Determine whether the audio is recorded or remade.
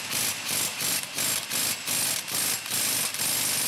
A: recorded